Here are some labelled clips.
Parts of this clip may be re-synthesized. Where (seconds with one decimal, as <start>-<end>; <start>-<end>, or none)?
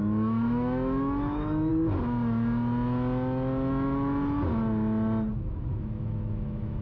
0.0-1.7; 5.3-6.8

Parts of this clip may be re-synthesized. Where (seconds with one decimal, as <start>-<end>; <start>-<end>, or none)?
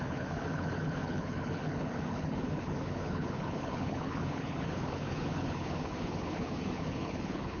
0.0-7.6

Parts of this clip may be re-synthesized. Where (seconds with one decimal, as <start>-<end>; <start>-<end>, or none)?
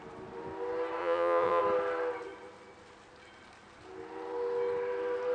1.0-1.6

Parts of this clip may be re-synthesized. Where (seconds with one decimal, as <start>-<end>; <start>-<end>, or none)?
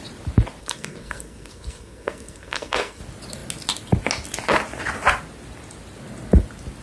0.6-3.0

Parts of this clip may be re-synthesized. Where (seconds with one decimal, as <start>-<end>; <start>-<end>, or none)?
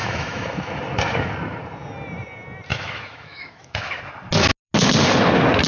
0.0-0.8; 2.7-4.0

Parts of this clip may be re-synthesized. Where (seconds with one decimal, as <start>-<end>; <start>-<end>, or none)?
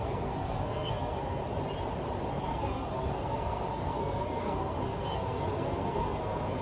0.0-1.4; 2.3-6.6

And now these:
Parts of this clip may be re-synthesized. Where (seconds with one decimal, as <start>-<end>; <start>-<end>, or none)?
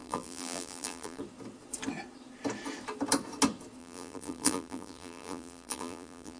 0.0-1.2; 3.8-6.4